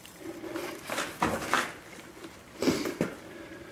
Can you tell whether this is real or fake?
real